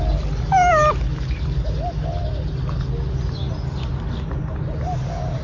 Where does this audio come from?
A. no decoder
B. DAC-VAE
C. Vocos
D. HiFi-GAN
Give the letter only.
A